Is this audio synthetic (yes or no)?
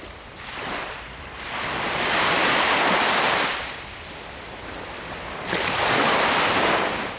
yes